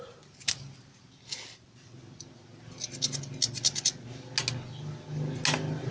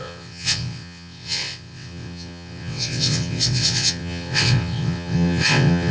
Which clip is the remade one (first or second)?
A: second